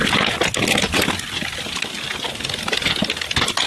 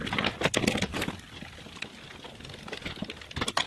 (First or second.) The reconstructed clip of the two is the second